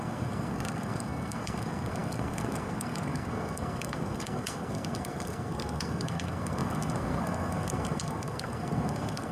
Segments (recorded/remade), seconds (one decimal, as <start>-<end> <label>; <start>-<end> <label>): 0.0-9.3 remade